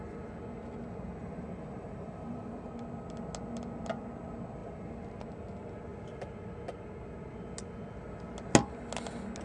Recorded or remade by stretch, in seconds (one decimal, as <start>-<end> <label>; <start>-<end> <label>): 0.0-1.2 recorded; 1.2-2.7 remade; 2.7-9.4 recorded